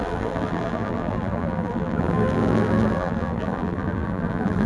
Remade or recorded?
remade